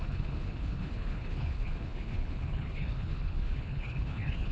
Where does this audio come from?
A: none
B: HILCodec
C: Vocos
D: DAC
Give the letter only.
B